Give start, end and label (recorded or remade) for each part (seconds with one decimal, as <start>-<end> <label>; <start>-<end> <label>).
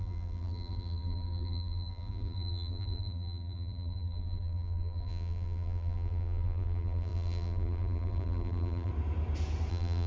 0.0-8.9 remade; 8.9-9.7 recorded; 9.7-10.1 remade